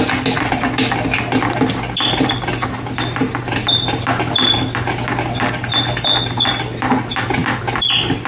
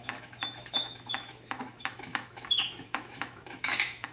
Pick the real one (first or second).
first